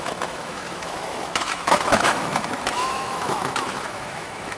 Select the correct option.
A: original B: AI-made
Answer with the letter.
B